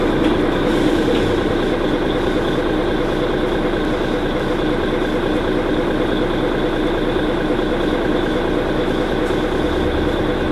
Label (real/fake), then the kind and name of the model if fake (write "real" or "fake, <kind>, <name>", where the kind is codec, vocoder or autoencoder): real